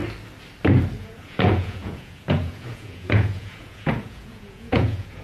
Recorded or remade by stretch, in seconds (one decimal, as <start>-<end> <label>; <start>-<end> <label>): 0.0-1.0 recorded; 1.0-5.2 remade